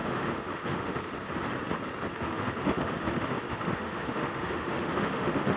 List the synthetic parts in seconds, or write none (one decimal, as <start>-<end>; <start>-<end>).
0.0-1.0; 2.1-5.6